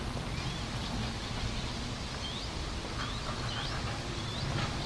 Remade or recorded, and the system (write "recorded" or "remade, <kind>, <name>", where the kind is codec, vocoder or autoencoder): recorded